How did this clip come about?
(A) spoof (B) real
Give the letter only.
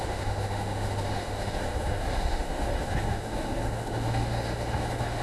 A